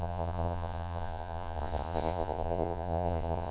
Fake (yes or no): yes